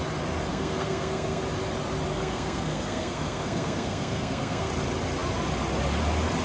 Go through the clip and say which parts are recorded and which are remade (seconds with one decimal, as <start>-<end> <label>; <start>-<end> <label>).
0.0-0.5 recorded; 0.5-1.4 remade; 1.4-2.1 recorded; 2.1-4.7 remade; 4.7-6.4 recorded